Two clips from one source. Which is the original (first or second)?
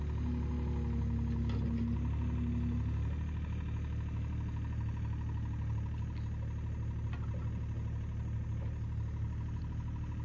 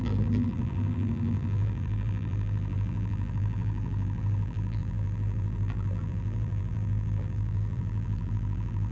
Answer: first